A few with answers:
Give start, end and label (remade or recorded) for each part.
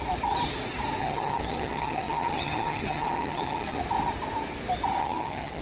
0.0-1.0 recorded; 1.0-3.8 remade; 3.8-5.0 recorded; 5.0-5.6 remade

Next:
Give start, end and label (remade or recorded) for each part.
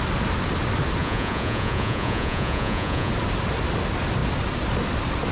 0.0-1.0 recorded; 1.0-3.1 remade; 3.1-5.3 recorded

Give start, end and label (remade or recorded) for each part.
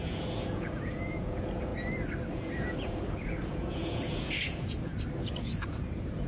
0.0-1.7 remade; 1.7-2.3 recorded; 2.3-4.9 remade; 4.9-5.4 recorded; 5.4-6.3 remade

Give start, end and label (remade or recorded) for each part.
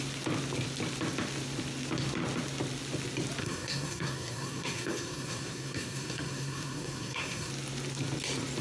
0.0-3.4 recorded; 3.4-7.5 remade; 7.5-8.6 recorded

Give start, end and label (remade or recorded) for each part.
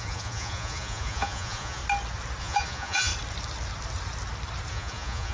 0.0-1.8 remade; 1.8-2.4 recorded; 2.4-3.1 remade; 3.1-4.7 recorded; 4.7-5.3 remade